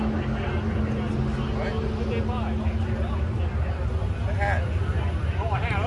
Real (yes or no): yes